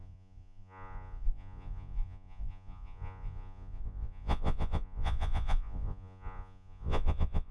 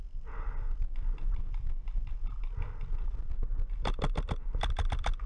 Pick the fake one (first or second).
first